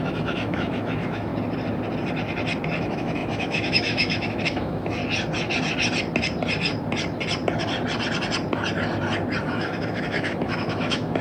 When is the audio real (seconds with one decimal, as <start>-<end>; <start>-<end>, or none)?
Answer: 1.3-2.8; 5.0-9.4